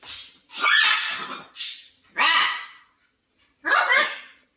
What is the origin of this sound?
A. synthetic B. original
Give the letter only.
B